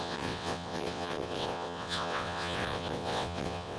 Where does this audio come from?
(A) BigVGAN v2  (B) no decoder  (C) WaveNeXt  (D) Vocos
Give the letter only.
C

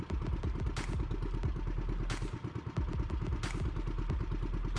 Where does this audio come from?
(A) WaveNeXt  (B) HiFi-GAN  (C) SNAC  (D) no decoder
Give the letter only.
D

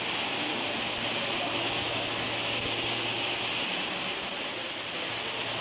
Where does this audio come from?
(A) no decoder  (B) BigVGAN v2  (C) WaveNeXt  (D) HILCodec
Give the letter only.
A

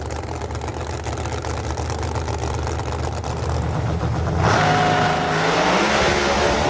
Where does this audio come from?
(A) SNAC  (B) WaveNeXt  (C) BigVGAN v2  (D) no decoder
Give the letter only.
D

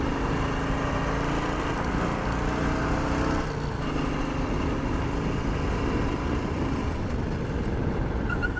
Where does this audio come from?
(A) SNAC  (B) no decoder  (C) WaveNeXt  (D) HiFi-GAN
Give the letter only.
B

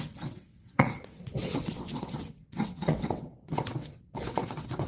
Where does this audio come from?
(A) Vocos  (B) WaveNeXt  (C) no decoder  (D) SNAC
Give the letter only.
B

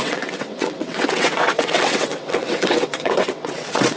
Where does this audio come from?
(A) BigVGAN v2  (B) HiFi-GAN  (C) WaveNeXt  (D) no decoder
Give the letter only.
C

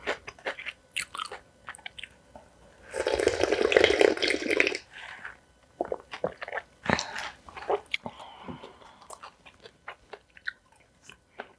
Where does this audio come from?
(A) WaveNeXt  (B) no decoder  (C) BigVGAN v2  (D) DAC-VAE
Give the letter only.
B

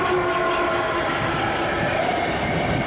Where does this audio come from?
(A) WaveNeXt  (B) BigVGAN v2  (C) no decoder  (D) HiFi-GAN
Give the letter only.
C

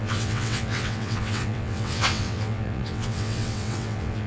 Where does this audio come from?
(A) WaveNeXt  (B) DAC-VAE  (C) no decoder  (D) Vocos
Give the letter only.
A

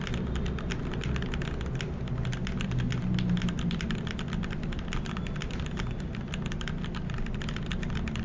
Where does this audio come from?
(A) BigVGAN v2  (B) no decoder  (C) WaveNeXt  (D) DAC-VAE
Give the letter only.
B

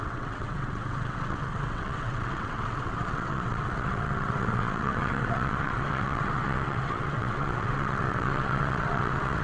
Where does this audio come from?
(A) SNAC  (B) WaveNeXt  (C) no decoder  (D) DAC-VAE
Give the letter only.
B